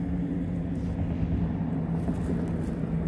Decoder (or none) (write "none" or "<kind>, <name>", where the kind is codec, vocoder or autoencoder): none